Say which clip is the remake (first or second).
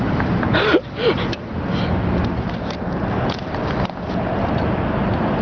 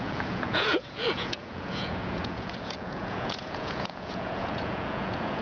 second